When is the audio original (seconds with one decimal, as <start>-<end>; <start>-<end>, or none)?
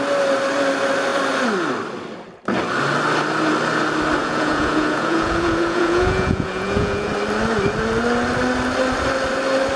0.0-4.2; 7.1-9.8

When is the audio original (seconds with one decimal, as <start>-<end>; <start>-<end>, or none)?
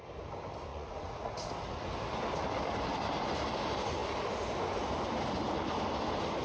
0.0-0.7; 1.5-6.4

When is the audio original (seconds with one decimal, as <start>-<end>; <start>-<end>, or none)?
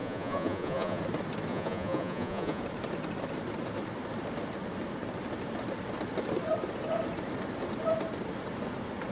1.0-1.5; 2.6-9.1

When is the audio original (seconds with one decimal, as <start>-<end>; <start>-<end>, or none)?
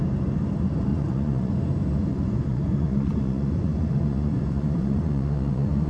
0.0-0.9; 1.5-2.1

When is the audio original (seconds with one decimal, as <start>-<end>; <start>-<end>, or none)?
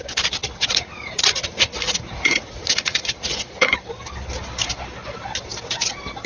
0.0-0.4; 3.7-6.3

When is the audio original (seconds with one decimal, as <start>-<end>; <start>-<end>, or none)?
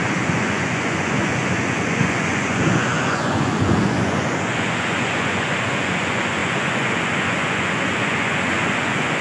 none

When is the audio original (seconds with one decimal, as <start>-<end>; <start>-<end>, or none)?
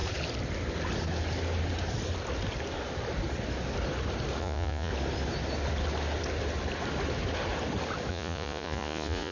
0.0-4.4; 4.9-8.1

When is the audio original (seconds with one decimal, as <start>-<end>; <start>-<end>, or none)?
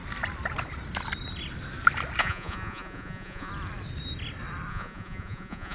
0.0-2.2; 3.5-4.7